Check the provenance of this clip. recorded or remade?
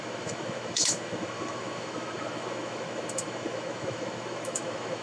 remade